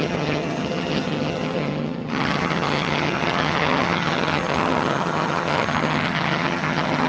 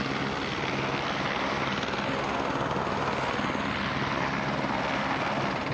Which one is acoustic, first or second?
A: second